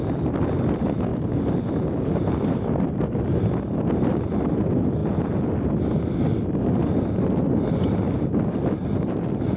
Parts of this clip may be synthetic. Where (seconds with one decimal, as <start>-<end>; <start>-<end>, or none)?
none